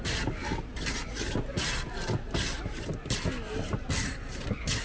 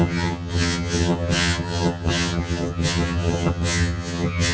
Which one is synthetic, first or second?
second